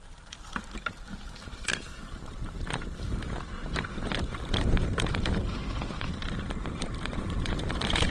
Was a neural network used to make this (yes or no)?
yes